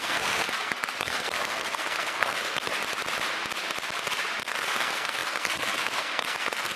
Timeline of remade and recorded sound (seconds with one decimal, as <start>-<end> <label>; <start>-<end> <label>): 0.0-2.7 remade; 2.7-4.4 recorded; 4.4-6.8 remade